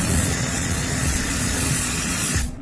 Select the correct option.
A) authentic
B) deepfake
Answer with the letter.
B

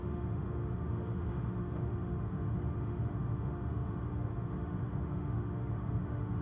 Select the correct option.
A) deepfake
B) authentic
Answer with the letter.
A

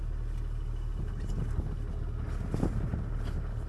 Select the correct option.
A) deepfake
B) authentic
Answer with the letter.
B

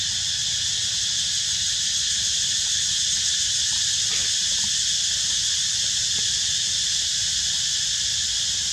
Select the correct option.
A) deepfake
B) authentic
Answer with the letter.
B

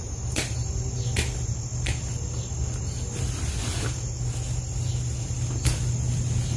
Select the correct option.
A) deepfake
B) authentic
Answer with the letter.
B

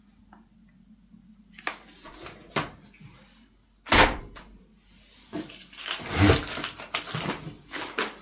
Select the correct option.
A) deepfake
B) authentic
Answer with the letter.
B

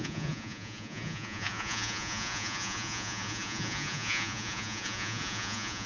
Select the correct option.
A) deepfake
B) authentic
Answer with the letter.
A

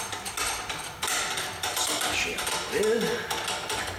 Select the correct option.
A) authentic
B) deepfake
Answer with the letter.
A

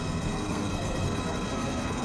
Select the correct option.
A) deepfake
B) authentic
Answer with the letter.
A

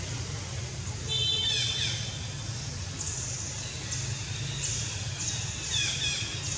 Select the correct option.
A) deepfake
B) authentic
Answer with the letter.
B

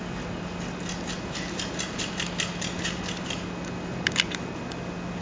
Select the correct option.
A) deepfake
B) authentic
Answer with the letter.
B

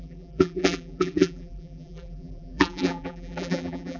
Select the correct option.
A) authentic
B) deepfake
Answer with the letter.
B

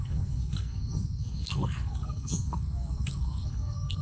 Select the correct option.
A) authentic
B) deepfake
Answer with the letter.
B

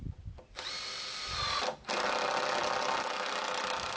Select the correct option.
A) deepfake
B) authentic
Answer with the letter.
B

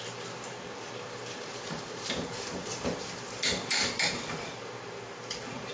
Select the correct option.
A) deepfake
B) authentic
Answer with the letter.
A